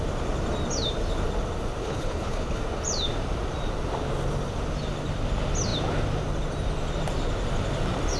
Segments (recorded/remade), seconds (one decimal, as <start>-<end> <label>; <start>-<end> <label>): 0.0-1.8 recorded; 1.8-2.6 remade; 2.6-8.2 recorded